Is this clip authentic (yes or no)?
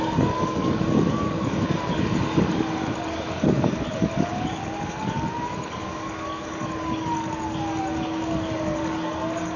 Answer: no